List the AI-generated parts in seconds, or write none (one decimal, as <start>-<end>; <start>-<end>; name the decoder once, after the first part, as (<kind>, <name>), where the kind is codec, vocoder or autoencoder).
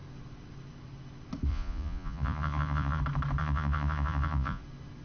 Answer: 1.5-3.0 (vocoder, Vocos); 3.4-4.6